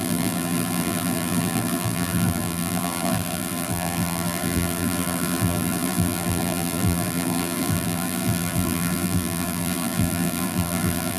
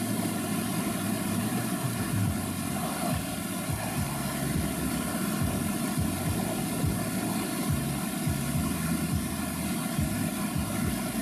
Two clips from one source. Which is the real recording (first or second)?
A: second